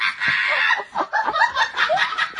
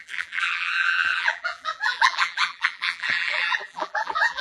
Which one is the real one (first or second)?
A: first